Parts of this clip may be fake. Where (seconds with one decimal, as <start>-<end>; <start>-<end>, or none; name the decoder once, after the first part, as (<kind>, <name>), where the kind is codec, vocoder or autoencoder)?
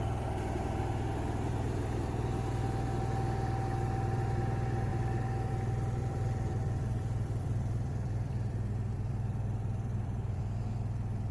4.9-5.5 (vocoder, BigVGAN v2); 6.0-10.4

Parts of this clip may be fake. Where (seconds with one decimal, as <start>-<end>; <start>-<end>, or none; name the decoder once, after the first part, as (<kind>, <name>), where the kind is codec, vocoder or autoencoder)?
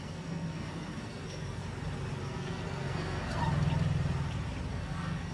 0.0-1.6 (codec, SNAC); 2.2-3.4; 4.7-5.3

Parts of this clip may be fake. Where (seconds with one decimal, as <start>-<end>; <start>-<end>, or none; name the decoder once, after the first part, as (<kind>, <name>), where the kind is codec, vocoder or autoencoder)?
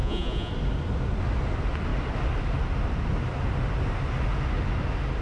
0.0-0.5 (vocoder, Vocos)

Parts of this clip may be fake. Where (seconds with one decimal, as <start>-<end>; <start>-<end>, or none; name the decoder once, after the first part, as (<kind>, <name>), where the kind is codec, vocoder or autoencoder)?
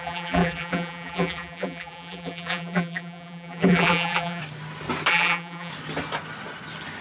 0.0-4.4 (vocoder, BigVGAN v2); 5.1-5.7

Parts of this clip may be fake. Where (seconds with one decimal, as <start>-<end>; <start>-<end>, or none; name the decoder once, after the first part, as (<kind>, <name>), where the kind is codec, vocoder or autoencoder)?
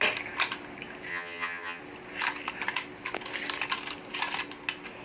1.1-1.8 (vocoder, HiFi-GAN)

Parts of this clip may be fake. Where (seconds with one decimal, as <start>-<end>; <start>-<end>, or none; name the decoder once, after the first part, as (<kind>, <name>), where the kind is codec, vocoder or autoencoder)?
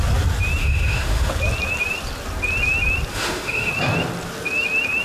0.6-1.3 (autoencoder, DAC-VAE); 3.1-3.7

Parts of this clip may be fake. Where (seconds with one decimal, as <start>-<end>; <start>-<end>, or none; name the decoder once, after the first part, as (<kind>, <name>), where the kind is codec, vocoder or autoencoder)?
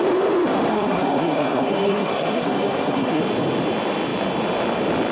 0.7-3.2 (codec, SNAC)